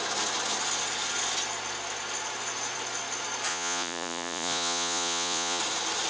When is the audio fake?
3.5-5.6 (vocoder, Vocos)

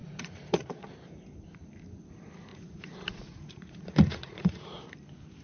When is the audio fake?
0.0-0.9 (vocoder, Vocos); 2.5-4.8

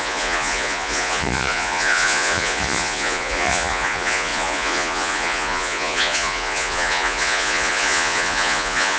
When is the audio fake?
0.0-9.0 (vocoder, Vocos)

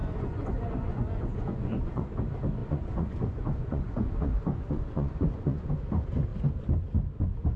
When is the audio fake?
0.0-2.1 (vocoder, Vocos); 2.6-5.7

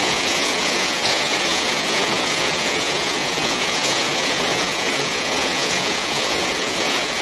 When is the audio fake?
0.0-7.2 (vocoder, Vocos)